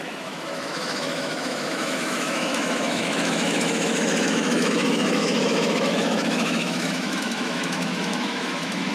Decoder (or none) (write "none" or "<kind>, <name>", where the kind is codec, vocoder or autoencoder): autoencoder, DAC-VAE